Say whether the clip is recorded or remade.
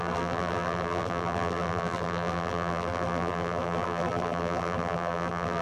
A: remade